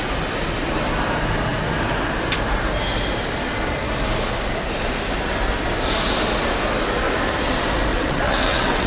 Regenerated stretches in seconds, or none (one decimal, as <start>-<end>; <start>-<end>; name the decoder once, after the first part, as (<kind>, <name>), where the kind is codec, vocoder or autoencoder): 7.9-8.9 (vocoder, WaveNeXt)